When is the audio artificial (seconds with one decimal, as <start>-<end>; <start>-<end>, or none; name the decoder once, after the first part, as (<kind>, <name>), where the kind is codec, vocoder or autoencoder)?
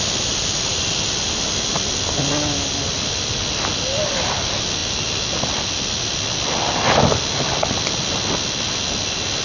none